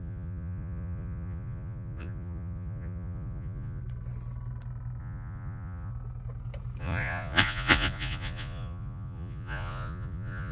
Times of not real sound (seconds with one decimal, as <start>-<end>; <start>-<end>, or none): 0.0-3.8; 5.0-5.9; 6.8-10.5